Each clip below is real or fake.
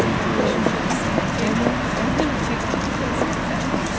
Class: real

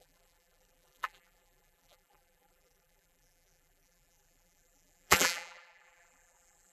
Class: fake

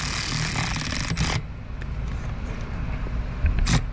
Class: real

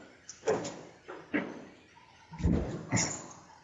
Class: real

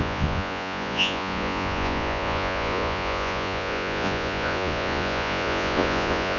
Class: fake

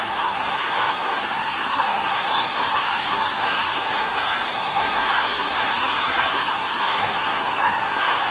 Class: fake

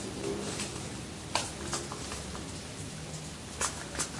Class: real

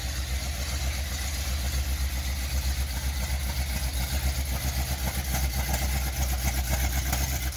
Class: real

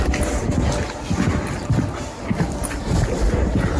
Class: real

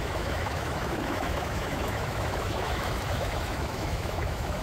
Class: fake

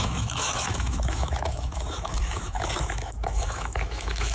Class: fake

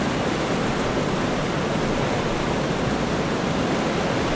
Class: real